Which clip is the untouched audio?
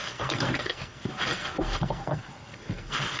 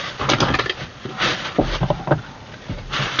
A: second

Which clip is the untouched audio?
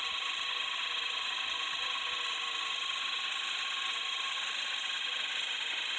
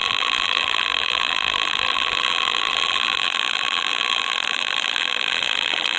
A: first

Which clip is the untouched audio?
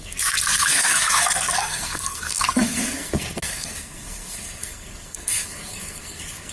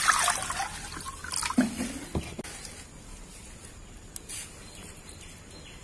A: second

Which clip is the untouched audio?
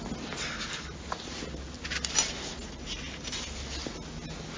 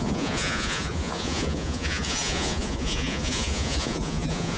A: first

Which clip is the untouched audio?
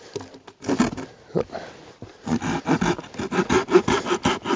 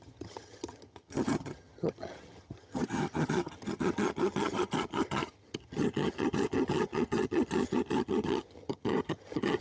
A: first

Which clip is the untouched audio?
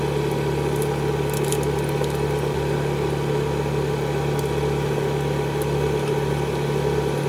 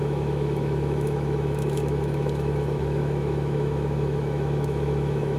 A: first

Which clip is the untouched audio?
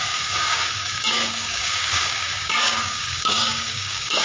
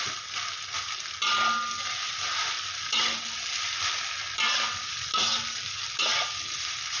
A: second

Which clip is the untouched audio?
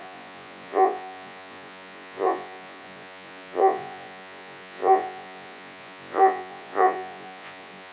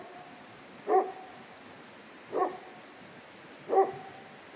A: second